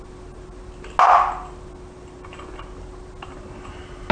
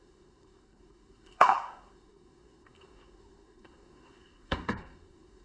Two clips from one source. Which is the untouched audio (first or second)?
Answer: first